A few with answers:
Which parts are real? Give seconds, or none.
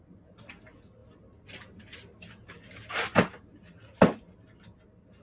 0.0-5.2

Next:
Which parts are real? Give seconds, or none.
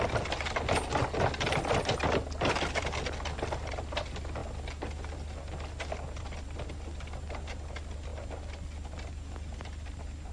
0.0-10.3